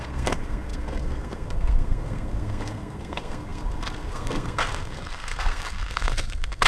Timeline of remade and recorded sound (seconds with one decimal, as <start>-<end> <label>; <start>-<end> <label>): 0.0-6.7 remade